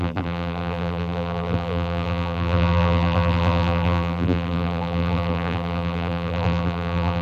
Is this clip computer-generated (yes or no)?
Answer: yes